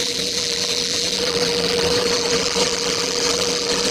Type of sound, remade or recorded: remade